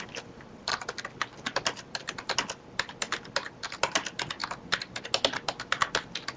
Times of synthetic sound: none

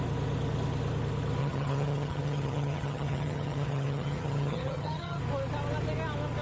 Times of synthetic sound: 1.4-5.2 (vocoder, HiFi-GAN)